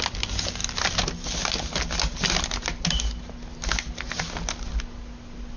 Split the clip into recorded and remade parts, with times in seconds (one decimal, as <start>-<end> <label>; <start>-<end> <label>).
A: 0.0-5.6 recorded